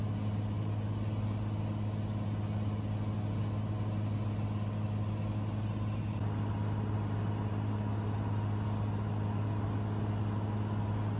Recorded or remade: recorded